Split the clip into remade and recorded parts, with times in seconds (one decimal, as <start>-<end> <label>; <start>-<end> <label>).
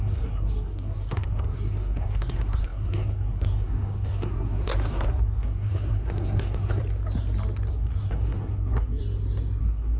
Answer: 0.0-6.8 remade; 6.8-7.7 recorded; 7.7-9.0 remade; 9.0-9.6 recorded; 9.6-10.0 remade